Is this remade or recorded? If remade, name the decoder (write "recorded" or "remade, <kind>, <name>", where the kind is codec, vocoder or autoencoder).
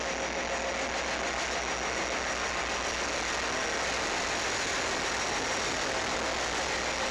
recorded